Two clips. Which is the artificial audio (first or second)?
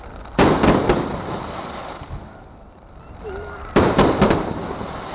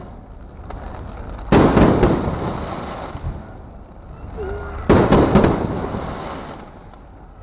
first